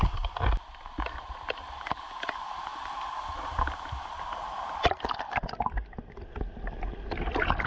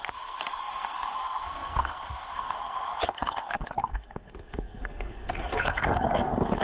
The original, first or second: first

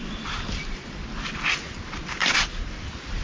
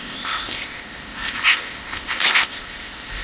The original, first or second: first